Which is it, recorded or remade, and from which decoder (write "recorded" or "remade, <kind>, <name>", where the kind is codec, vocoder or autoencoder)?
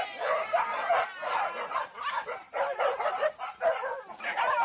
recorded